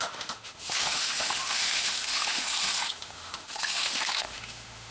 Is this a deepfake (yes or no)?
yes